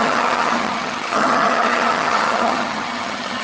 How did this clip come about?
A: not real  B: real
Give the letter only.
A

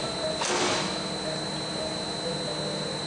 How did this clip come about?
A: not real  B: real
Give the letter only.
B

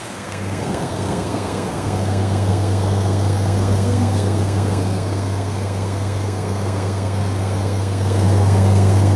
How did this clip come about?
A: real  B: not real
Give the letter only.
B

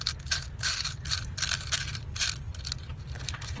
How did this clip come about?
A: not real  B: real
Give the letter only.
B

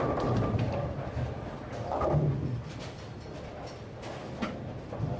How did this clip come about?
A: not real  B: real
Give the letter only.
B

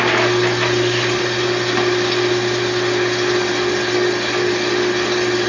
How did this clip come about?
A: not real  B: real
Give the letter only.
B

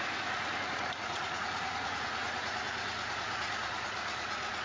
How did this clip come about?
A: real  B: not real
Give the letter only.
B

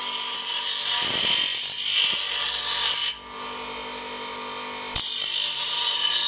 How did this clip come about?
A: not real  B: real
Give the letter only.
B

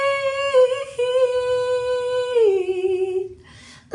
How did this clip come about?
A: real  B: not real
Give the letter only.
A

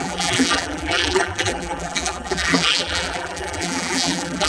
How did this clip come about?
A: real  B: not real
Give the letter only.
B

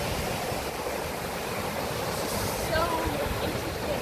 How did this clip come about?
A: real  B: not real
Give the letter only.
B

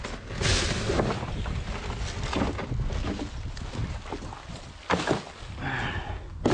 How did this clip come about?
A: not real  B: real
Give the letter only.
B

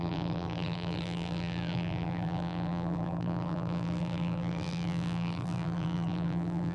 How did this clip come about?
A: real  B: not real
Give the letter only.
B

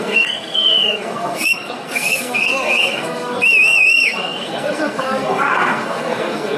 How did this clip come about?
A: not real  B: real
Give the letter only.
A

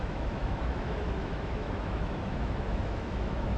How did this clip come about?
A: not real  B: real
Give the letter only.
A